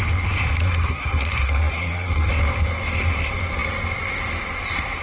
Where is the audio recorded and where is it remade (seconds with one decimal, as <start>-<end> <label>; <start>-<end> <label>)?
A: 0.0-0.6 recorded; 0.6-2.3 remade; 2.3-5.0 recorded